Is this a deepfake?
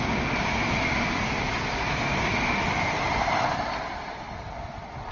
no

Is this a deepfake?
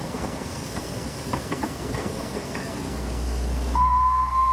yes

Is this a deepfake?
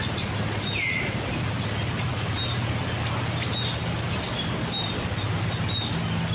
no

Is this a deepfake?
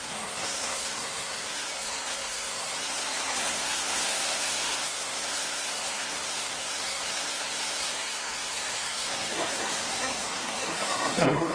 yes